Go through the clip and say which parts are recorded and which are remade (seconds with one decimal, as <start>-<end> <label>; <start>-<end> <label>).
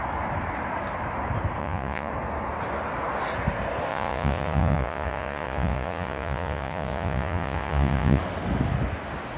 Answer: 0.0-1.6 recorded; 1.6-2.1 remade; 2.1-3.9 recorded; 3.9-8.2 remade; 8.2-9.4 recorded